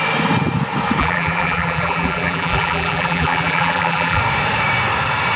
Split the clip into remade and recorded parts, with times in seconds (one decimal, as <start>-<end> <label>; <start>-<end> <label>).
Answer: 0.0-1.0 recorded; 1.0-4.2 remade; 4.2-5.4 recorded